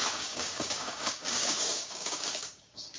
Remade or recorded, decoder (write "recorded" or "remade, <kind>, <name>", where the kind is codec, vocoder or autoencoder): remade, codec, DAC